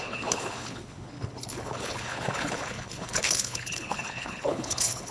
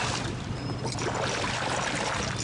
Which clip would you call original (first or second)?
second